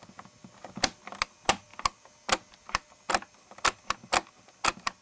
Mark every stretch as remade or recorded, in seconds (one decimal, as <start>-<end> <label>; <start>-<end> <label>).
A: 0.0-5.0 recorded